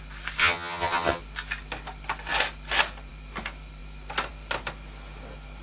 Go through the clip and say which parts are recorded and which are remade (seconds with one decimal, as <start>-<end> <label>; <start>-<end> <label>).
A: 0.0-0.4 recorded; 0.4-1.2 remade; 1.2-5.6 recorded